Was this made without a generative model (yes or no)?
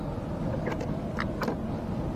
yes